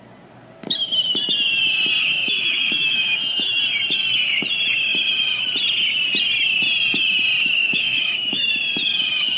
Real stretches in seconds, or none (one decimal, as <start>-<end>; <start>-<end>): 0.0-2.0; 3.6-7.6; 8.5-9.4